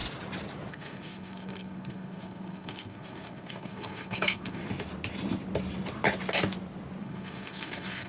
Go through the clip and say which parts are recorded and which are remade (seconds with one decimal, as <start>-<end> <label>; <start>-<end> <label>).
0.0-0.7 recorded; 0.7-4.6 remade; 4.6-7.0 recorded; 7.0-8.1 remade